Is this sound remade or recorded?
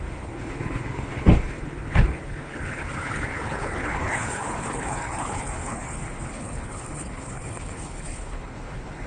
remade